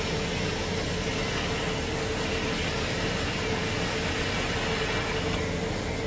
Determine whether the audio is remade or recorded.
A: recorded